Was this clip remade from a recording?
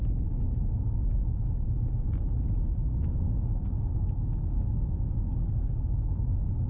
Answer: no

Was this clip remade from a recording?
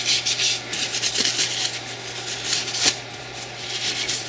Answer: yes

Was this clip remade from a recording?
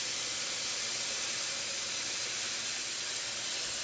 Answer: no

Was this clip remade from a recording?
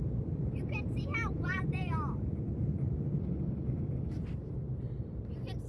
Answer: yes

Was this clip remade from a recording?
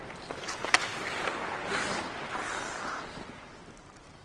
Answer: no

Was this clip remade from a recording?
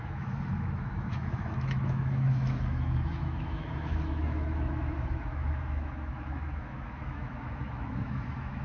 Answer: yes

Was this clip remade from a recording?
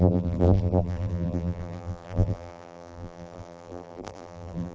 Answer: yes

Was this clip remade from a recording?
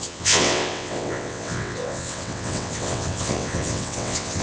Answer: yes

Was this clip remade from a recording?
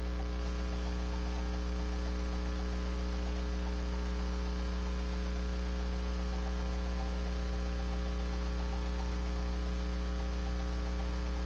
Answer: no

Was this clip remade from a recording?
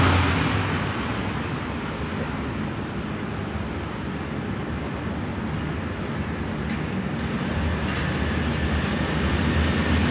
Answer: no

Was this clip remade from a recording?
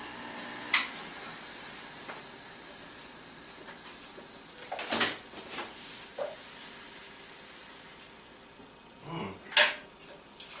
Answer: no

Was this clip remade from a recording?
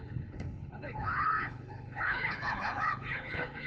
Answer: yes